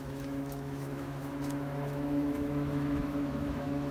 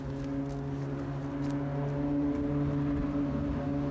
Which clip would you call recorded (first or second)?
second